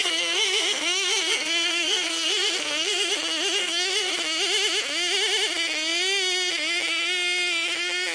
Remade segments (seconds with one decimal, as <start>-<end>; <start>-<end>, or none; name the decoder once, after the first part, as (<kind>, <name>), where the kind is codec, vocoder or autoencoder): 0.0-3.1 (codec, SNAC); 3.6-4.1

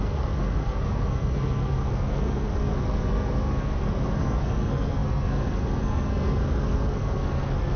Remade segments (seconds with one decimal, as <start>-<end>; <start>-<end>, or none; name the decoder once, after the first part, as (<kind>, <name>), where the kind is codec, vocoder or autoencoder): 0.0-7.8 (codec, SNAC)

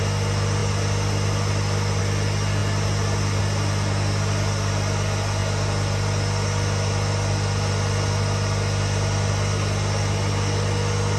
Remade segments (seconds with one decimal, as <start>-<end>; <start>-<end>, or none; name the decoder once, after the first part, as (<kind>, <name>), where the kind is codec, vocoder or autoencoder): none

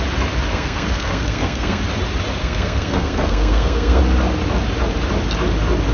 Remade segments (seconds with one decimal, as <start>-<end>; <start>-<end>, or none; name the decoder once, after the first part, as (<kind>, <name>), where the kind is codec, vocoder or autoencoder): 0.5-1.8 (codec, SNAC); 2.4-4.0